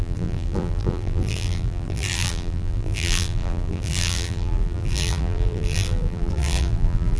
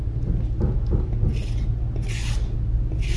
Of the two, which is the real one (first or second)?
second